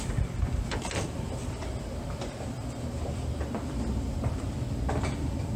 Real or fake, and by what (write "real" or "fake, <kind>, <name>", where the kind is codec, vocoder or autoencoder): fake, vocoder, BigVGAN v2